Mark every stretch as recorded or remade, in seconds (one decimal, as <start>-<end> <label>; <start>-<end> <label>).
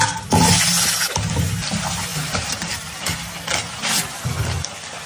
0.0-2.1 recorded; 2.1-3.3 remade; 3.3-5.1 recorded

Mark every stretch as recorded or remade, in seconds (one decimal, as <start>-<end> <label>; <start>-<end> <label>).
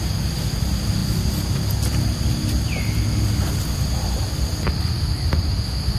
0.0-6.0 recorded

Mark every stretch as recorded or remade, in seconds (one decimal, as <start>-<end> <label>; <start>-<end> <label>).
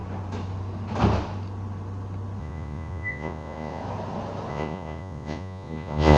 0.0-2.4 recorded; 2.4-3.8 remade; 3.8-4.5 recorded; 4.5-6.2 remade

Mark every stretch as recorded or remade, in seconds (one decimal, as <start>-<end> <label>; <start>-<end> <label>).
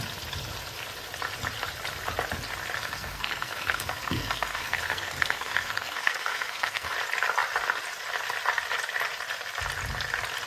0.0-2.8 recorded; 2.8-6.9 remade; 6.9-10.5 recorded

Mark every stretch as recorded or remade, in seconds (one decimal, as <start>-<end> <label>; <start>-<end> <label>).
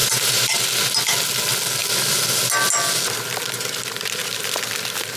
0.0-0.7 remade; 0.7-5.2 recorded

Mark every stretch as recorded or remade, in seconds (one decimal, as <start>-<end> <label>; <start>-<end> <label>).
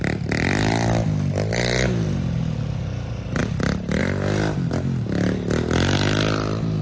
0.0-6.8 recorded